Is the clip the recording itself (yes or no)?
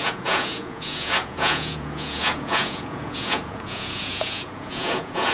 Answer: no